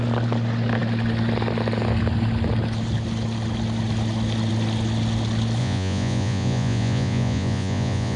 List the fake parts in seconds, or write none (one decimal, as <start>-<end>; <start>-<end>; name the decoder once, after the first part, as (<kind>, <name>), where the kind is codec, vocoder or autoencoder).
5.6-8.2 (vocoder, Vocos)